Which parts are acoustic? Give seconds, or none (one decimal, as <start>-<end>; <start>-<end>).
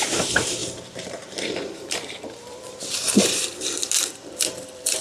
none